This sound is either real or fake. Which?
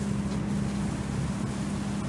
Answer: real